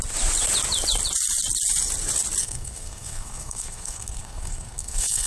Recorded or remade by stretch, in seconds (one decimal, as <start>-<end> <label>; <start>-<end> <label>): 0.0-2.4 recorded; 2.4-5.3 remade